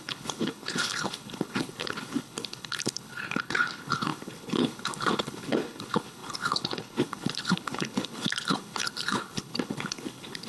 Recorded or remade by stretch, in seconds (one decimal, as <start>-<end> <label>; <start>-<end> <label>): 0.0-10.5 remade